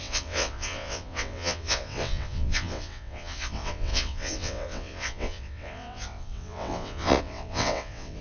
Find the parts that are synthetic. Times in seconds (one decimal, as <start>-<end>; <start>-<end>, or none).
0.0-8.2